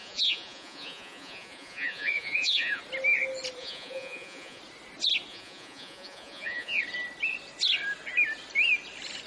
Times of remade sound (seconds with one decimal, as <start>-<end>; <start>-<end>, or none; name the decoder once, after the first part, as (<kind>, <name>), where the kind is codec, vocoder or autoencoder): 0.0-2.8 (vocoder, Vocos); 3.6-4.6; 5.3-6.8